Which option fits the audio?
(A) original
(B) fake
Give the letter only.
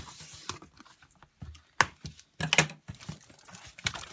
A